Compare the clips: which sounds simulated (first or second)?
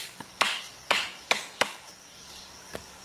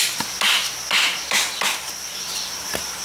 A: first